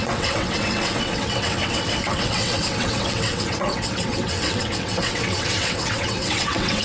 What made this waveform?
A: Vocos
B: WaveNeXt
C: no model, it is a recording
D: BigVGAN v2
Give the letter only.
B